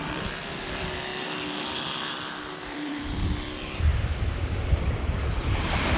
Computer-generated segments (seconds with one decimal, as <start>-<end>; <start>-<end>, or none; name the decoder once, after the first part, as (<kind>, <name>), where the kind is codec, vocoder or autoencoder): 0.0-1.1 (vocoder, BigVGAN v2); 2.3-3.9